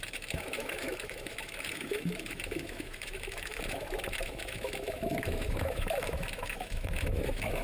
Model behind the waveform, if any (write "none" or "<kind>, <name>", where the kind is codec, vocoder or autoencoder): autoencoder, DAC-VAE